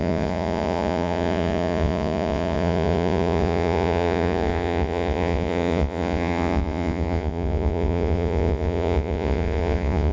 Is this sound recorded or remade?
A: remade